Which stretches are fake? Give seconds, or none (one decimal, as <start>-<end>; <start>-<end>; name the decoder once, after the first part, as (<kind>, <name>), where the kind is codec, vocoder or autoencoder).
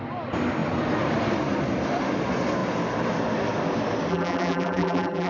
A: 4.1-5.3 (vocoder, BigVGAN v2)